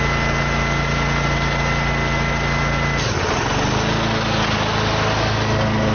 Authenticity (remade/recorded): recorded